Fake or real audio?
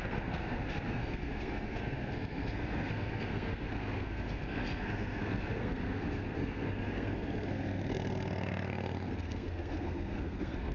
fake